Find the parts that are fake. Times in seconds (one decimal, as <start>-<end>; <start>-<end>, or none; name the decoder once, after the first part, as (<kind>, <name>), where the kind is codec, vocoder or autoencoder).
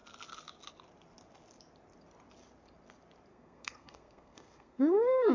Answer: 3.3-5.3 (codec, SNAC)